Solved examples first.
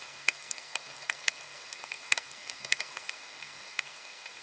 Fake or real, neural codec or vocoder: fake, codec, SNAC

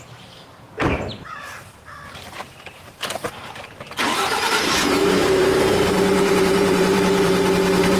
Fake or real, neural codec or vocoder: fake, vocoder, BigVGAN v2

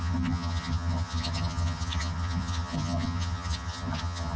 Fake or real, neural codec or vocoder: fake, vocoder, HiFi-GAN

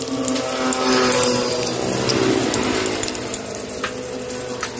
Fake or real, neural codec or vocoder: real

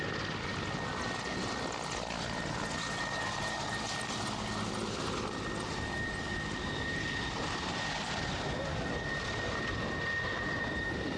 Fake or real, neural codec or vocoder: real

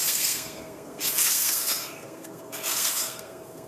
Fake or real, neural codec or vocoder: fake, codec, SNAC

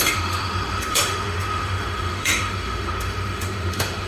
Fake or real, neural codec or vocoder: fake, autoencoder, DAC-VAE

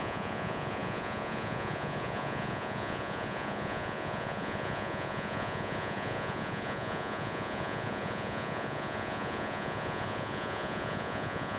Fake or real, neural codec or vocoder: fake, vocoder, Vocos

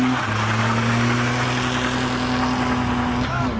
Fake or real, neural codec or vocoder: real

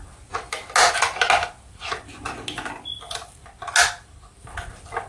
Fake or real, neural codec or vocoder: real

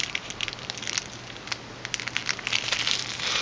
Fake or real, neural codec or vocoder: real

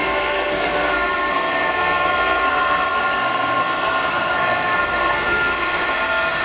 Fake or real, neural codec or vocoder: fake, codec, SNAC